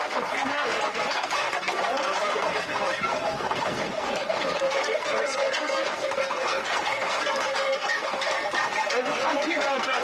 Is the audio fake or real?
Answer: fake